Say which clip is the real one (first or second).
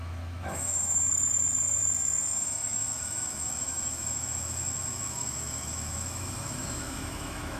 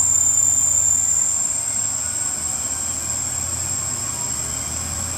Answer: second